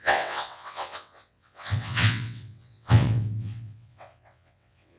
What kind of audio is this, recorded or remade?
remade